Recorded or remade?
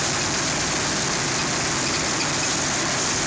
recorded